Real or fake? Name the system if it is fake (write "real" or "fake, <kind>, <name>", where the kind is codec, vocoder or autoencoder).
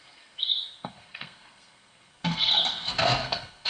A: fake, codec, SNAC